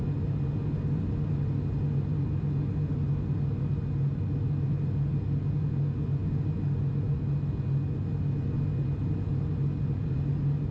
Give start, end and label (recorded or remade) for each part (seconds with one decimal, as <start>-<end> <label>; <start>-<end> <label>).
0.0-10.7 recorded